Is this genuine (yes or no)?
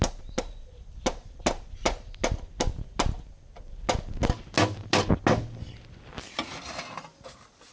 yes